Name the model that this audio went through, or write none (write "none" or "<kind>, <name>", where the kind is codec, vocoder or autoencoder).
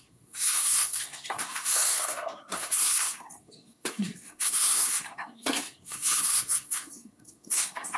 codec, SNAC